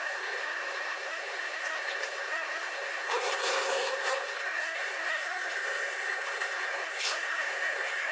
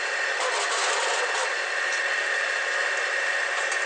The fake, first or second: first